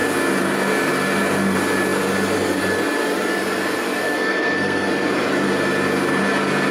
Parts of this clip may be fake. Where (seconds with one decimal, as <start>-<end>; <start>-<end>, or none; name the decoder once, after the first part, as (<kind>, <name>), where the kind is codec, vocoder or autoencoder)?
4.0-4.9 (codec, SNAC)